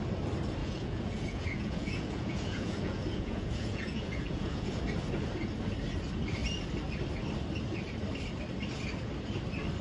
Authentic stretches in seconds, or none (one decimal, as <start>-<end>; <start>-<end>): 0.0-0.6; 4.8-9.8